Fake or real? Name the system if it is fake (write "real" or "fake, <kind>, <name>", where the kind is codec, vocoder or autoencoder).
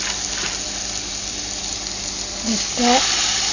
real